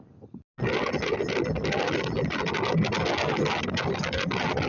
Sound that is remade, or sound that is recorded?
recorded